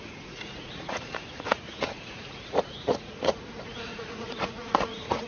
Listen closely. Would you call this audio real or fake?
fake